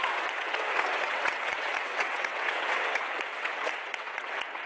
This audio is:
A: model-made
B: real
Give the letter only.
A